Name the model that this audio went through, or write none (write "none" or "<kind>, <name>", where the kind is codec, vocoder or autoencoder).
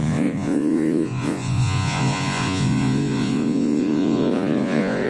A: vocoder, Vocos